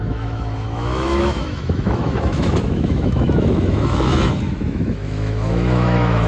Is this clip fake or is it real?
fake